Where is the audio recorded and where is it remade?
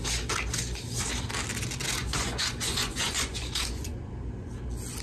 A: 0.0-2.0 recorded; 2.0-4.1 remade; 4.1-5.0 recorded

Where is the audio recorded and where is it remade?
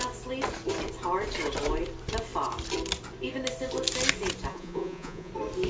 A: 0.0-4.5 recorded; 4.5-5.3 remade; 5.3-5.7 recorded